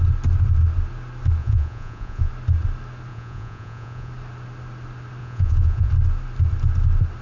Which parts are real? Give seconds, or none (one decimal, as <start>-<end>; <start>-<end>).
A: 0.0-1.4; 2.3-3.1; 4.1-5.2; 5.9-7.2